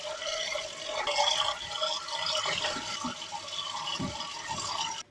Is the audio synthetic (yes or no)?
no